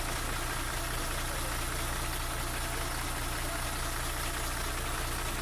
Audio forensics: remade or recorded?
recorded